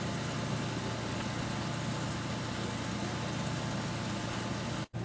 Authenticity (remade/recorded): recorded